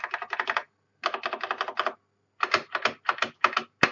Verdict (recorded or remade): recorded